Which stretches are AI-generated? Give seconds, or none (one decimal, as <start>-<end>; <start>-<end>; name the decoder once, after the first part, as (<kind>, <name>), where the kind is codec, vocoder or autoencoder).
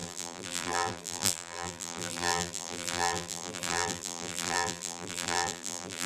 0.0-6.1 (vocoder, BigVGAN v2)